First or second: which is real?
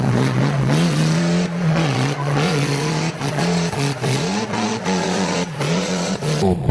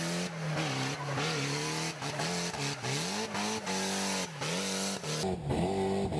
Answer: second